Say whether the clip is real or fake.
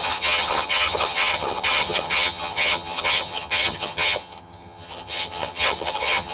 fake